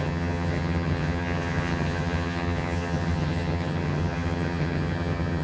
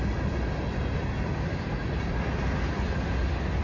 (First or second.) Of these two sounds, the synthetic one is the first